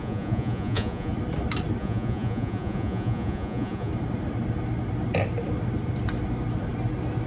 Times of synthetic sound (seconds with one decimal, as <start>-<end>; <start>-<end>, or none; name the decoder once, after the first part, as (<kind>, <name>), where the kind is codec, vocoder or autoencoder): 0.0-1.1 (vocoder, Vocos); 1.8-3.9